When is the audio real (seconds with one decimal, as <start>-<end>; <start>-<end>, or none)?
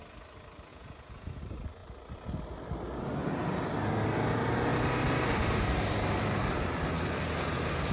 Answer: 0.0-0.7; 1.4-7.9